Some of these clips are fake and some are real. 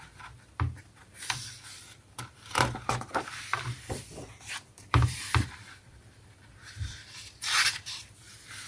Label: fake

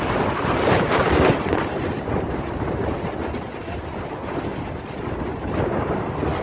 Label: real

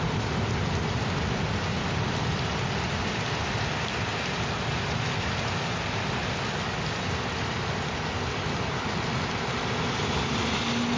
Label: real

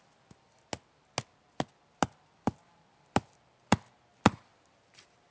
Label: real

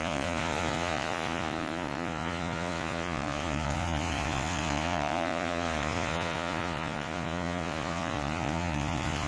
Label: fake